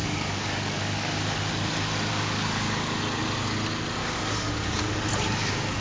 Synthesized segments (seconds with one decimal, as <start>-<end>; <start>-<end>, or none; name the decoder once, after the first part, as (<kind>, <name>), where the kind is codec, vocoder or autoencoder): 0.0-1.4 (codec, DAC); 2.1-3.0; 4.0-4.5